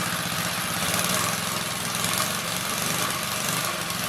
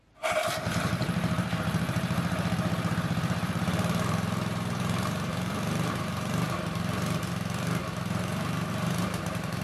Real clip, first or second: first